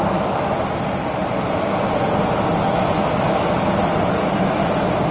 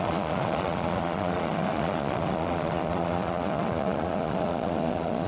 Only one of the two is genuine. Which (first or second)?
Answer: first